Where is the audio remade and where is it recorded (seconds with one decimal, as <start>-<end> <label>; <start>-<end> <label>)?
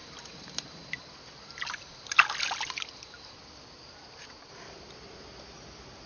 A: 0.0-6.1 recorded